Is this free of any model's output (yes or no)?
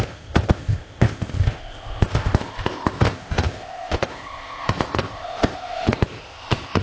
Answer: no